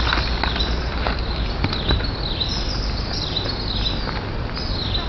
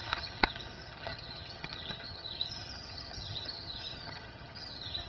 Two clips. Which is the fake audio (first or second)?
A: second